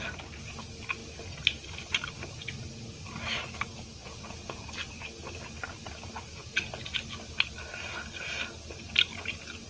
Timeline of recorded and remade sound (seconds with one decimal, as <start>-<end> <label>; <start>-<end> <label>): 0.0-4.0 recorded; 4.0-4.7 remade; 4.7-9.7 recorded